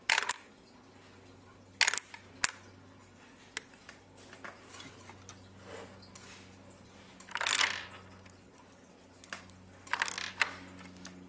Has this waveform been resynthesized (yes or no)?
no